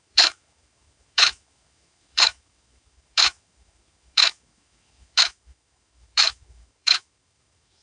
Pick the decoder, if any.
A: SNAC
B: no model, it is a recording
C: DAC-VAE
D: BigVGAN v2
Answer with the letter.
C